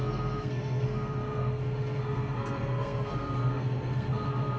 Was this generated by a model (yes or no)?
yes